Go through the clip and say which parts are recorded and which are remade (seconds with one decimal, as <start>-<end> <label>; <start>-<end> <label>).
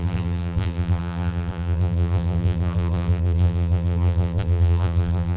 0.0-5.4 remade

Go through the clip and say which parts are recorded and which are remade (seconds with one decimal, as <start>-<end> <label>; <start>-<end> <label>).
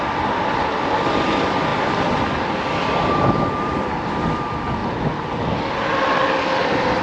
0.0-4.8 remade; 4.8-6.6 recorded; 6.6-7.0 remade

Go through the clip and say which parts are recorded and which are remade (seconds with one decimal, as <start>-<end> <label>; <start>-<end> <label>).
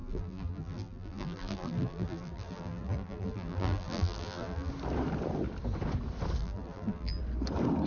0.0-4.7 remade; 4.7-6.4 recorded; 6.4-7.2 remade; 7.2-7.9 recorded